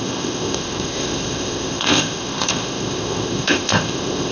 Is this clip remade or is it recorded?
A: remade